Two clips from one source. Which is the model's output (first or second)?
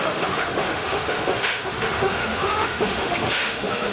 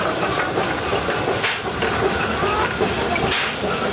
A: first